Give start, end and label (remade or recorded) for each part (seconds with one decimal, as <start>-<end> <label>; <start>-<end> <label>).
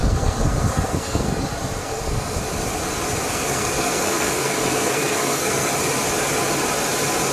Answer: 0.0-1.4 remade; 1.4-1.8 recorded; 1.8-2.4 remade; 2.4-3.3 recorded; 3.3-5.7 remade; 5.7-7.3 recorded